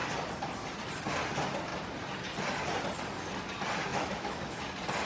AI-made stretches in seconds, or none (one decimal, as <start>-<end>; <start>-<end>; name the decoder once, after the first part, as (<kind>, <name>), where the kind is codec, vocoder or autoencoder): 3.9-4.6 (autoencoder, DAC-VAE)